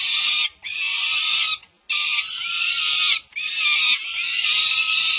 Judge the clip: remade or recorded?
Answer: recorded